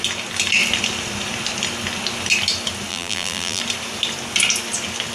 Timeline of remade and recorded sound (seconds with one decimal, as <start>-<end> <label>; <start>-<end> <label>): 0.0-2.9 recorded; 2.9-3.6 remade; 3.6-5.1 recorded